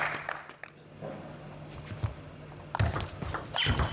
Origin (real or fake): real